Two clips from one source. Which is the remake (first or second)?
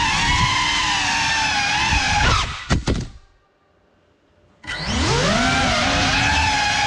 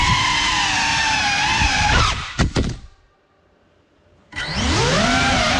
second